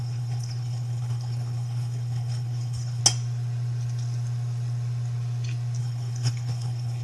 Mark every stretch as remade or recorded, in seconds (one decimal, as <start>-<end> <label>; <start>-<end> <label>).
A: 0.0-3.0 remade; 3.0-5.8 recorded; 5.8-7.0 remade